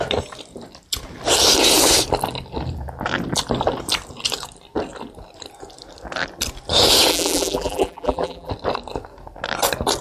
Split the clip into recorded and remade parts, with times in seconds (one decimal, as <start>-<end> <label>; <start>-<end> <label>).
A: 0.0-7.1 recorded; 7.1-8.5 remade; 8.5-10.0 recorded

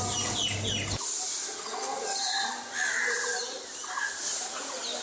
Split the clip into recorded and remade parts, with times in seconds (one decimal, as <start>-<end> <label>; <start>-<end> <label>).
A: 0.0-3.3 recorded; 3.3-4.0 remade; 4.0-5.0 recorded

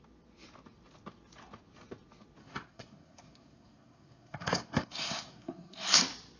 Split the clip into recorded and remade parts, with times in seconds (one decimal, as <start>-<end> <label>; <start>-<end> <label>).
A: 0.0-2.4 recorded; 2.4-6.0 remade; 6.0-6.4 recorded